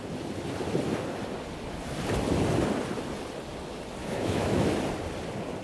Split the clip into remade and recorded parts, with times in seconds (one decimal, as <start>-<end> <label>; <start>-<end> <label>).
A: 0.0-4.0 recorded; 4.0-4.6 remade; 4.6-5.6 recorded